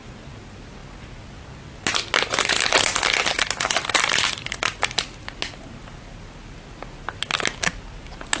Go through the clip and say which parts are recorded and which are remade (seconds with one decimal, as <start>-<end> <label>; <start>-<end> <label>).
0.0-8.4 recorded